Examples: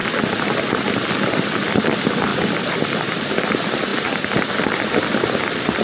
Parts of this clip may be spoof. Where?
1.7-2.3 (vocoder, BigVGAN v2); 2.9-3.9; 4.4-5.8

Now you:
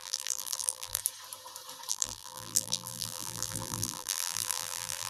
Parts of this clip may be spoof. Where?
0.0-1.0 (vocoder, BigVGAN v2); 1.9-5.1

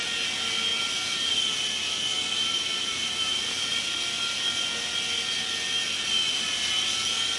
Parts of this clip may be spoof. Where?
0.7-1.3 (vocoder, BigVGAN v2); 2.5-3.8

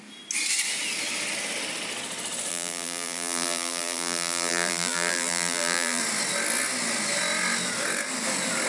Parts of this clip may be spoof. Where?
2.5-6.0 (vocoder, BigVGAN v2)

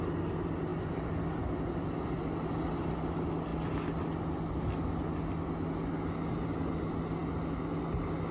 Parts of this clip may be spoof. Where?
none

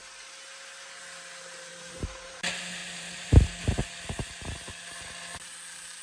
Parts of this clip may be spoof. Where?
1.7-2.4 (vocoder, BigVGAN v2); 2.8-3.3